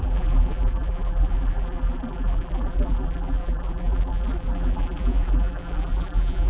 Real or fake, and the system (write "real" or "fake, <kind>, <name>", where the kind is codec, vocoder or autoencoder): fake, vocoder, BigVGAN v2